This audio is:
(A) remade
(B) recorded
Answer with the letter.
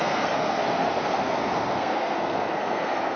A